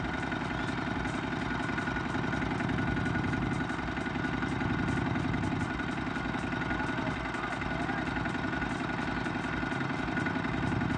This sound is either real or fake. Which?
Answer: real